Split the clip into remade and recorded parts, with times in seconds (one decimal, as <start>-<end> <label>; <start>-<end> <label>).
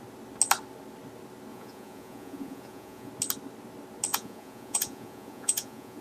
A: 0.0-1.5 recorded; 1.5-3.1 remade; 3.1-4.1 recorded; 4.1-6.0 remade